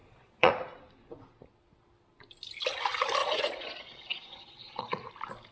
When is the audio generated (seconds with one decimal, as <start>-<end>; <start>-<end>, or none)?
0.0-0.5; 3.2-5.1